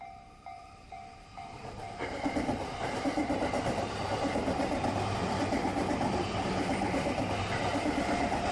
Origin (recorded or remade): remade